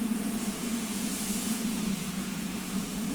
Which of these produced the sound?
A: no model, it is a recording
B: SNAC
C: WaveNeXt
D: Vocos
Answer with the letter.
D